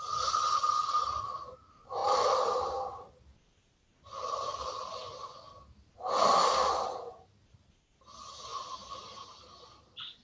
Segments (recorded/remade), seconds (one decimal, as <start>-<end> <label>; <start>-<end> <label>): 0.0-2.0 recorded; 2.0-3.1 remade; 3.1-8.5 recorded; 8.5-9.4 remade; 9.4-10.2 recorded